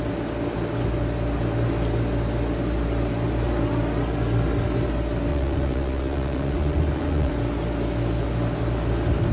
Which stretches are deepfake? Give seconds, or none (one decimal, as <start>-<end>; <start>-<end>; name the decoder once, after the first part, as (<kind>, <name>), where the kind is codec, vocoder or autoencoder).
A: 5.3-7.3 (vocoder, Vocos)